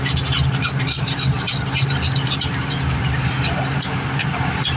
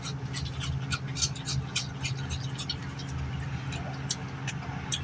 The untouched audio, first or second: second